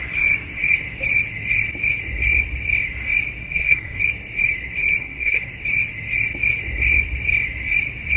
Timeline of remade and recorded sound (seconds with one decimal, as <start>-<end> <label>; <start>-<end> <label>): 0.0-3.4 recorded; 3.4-4.0 remade; 4.0-5.0 recorded; 5.0-5.5 remade; 5.5-8.2 recorded